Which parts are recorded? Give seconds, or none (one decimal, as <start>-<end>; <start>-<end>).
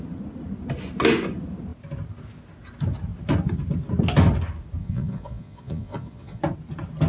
0.0-4.8; 6.4-7.1